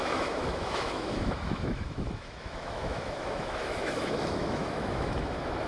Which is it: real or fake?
fake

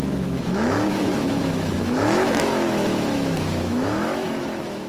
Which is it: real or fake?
fake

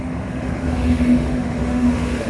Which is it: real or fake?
fake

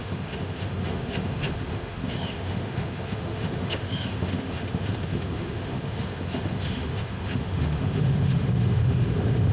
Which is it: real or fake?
fake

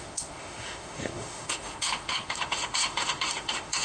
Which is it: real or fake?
fake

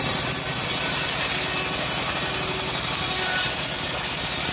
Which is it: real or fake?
real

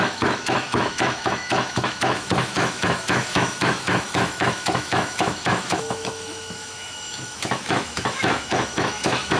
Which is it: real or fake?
fake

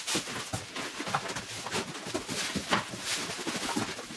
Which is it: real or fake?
real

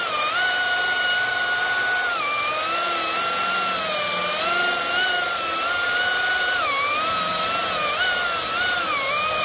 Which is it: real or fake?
real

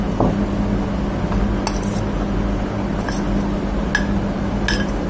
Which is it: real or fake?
real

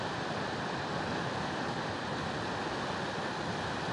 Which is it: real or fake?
real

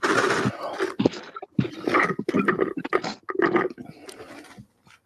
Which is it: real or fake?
real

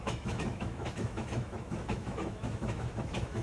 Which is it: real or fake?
fake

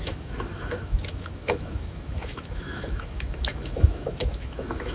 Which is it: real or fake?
fake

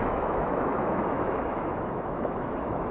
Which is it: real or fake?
fake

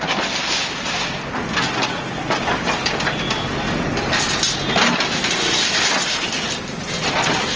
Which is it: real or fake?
real